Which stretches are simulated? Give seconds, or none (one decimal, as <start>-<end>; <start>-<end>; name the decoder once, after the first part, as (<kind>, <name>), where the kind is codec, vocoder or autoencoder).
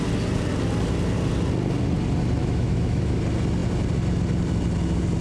2.4-3.2 (autoencoder, DAC-VAE)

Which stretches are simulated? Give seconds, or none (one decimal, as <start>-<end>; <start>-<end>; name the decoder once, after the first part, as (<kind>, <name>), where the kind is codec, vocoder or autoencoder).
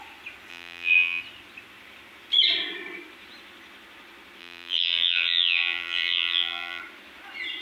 0.5-1.2 (vocoder, BigVGAN v2); 4.4-6.8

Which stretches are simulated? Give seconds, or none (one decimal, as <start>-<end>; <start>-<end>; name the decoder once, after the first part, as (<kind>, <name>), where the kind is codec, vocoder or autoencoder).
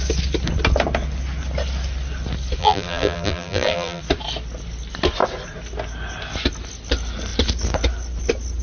2.6-4.0 (vocoder, BigVGAN v2)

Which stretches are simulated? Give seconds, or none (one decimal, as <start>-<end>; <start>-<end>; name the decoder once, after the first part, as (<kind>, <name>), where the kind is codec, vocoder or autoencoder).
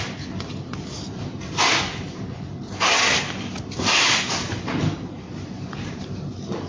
3.9-6.2 (vocoder, BigVGAN v2)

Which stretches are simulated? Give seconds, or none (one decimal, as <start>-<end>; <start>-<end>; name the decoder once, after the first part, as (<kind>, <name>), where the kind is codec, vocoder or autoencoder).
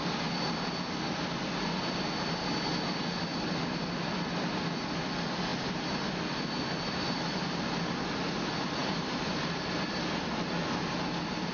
8.8-9.3 (vocoder, BigVGAN v2)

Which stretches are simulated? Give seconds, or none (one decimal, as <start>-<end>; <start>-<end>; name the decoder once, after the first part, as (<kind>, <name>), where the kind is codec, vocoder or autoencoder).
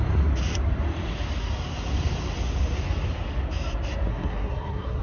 4.1-5.0 (codec, SNAC)